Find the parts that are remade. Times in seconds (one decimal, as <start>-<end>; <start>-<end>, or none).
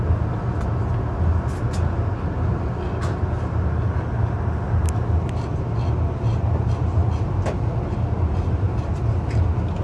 none